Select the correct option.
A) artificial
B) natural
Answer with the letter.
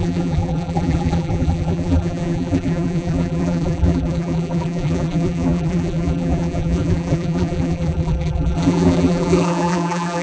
A